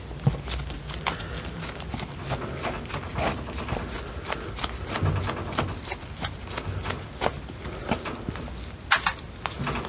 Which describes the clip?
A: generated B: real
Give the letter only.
B